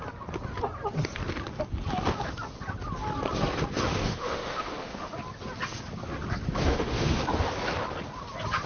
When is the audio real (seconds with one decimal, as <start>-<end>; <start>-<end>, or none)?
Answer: 0.0-4.0; 5.1-6.6; 7.2-8.7